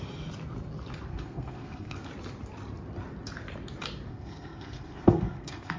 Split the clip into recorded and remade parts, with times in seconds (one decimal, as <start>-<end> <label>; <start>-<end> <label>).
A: 0.0-1.1 recorded; 1.1-2.1 remade; 2.1-4.1 recorded; 4.1-5.8 remade

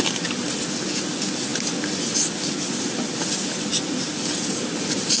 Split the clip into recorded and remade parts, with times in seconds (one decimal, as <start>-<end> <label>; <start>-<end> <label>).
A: 0.0-5.2 recorded

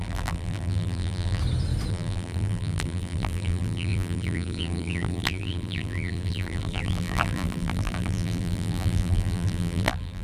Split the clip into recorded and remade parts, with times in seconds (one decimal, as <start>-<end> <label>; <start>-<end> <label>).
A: 0.0-1.4 remade; 1.4-1.9 recorded; 1.9-10.2 remade

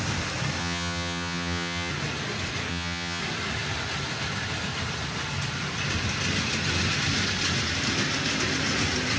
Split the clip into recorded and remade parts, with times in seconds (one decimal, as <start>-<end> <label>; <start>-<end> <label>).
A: 0.0-0.6 recorded; 0.6-1.9 remade; 1.9-2.7 recorded; 2.7-3.2 remade; 3.2-9.2 recorded